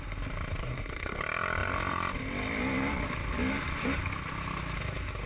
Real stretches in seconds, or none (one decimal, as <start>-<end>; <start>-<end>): 0.0-0.6; 1.2-5.3